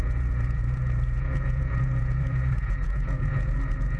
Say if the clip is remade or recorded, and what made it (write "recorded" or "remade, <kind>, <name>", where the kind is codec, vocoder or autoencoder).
remade, vocoder, Vocos